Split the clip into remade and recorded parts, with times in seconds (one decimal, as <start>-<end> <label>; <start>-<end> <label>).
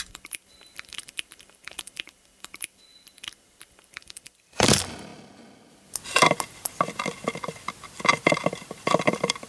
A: 0.0-5.1 remade; 5.1-9.0 recorded; 9.0-9.5 remade